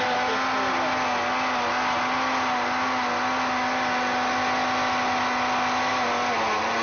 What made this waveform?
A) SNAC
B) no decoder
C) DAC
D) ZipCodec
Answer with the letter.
B